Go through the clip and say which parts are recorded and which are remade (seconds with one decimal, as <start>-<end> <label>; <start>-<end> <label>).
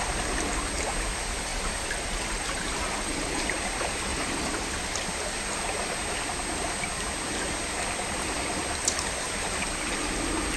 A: 0.0-1.5 recorded; 1.5-3.4 remade; 3.4-4.1 recorded; 4.1-5.1 remade; 5.1-10.6 recorded